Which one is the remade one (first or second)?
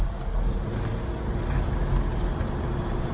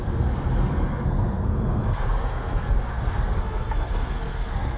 second